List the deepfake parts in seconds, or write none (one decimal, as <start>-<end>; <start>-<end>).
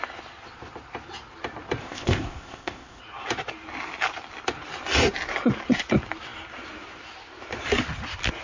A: 1.8-3.0